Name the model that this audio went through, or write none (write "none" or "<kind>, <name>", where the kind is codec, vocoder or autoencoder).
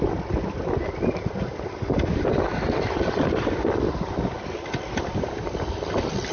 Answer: none